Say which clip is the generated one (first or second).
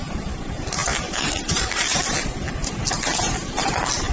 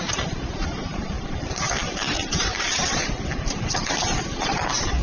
second